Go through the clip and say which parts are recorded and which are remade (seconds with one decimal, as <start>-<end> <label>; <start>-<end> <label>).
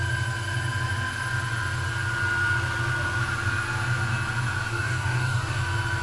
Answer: 0.0-4.7 recorded; 4.7-5.6 remade; 5.6-6.0 recorded